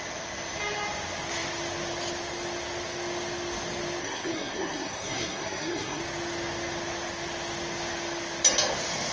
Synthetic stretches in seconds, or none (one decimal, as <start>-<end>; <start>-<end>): 4.0-6.0